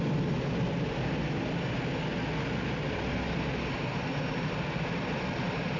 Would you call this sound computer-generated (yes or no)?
no